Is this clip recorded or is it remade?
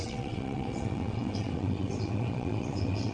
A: remade